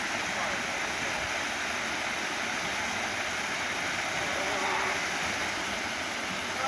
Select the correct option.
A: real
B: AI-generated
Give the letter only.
A